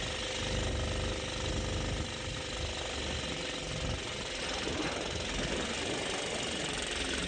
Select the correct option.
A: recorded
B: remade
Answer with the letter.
A